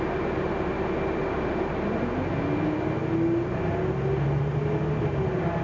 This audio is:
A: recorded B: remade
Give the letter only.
A